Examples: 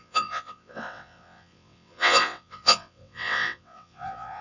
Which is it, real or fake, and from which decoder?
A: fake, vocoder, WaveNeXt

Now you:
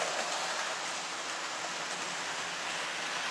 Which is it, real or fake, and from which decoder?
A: real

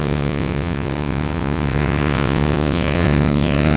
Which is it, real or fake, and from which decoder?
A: fake, vocoder, WaveNeXt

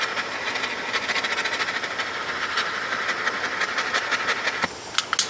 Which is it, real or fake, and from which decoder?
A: real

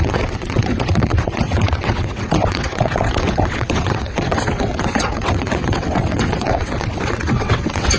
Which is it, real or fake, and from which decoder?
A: fake, vocoder, WaveNeXt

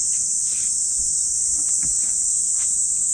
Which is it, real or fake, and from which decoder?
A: real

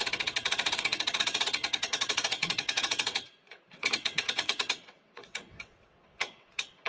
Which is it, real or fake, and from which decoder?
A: fake, vocoder, WaveNeXt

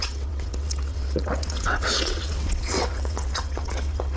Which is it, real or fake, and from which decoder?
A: fake, vocoder, WaveNeXt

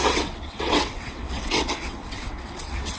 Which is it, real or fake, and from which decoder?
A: fake, vocoder, WaveNeXt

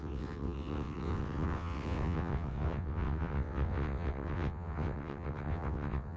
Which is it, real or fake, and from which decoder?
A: fake, vocoder, WaveNeXt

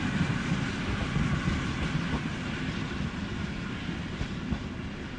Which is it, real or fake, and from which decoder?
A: real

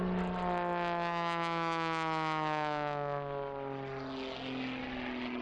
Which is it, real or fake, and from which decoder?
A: real